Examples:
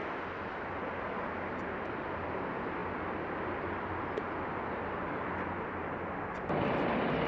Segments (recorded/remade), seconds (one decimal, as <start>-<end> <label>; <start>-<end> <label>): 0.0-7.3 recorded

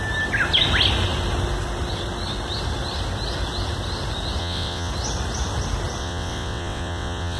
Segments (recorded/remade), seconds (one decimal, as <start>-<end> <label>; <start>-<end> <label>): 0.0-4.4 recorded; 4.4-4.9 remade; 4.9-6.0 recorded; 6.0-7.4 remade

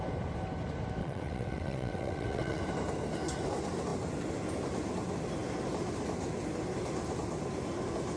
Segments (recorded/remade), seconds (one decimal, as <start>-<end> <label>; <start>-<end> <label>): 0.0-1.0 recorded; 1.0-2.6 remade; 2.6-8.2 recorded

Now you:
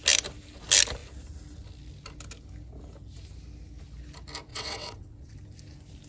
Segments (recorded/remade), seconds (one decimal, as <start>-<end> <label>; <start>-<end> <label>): 0.0-4.5 recorded; 4.5-5.3 remade; 5.3-6.1 recorded

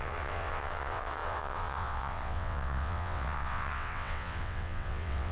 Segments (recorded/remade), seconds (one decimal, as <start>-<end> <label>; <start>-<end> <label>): 0.0-5.3 remade

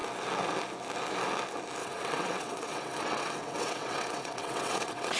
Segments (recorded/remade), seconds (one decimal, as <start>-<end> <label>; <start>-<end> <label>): 0.0-1.8 recorded; 1.8-5.2 remade